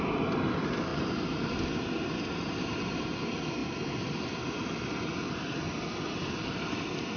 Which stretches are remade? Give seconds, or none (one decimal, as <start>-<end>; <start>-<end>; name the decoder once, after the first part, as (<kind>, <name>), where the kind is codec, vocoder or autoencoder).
0.9-3.1 (vocoder, BigVGAN v2)